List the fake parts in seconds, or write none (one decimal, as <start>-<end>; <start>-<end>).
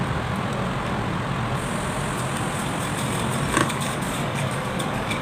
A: 3.6-5.2